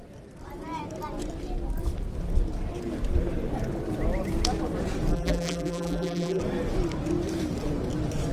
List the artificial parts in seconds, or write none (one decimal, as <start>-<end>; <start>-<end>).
5.1-6.4